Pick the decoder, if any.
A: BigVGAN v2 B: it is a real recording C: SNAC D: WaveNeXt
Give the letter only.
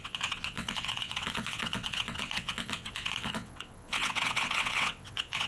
D